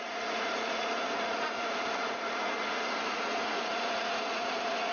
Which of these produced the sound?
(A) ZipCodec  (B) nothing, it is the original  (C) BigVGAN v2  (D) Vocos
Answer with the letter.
D